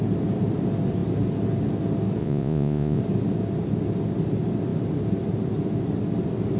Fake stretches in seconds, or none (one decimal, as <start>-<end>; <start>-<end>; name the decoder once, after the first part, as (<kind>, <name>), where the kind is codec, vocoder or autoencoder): 2.2-3.0 (vocoder, Vocos)